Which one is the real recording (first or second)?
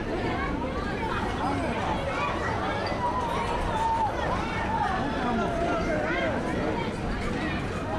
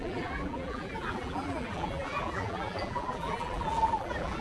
first